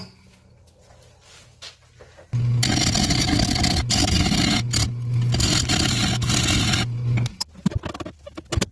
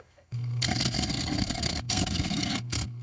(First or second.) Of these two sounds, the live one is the first